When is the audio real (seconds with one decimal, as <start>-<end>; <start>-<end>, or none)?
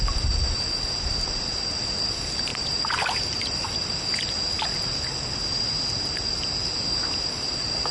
0.0-7.9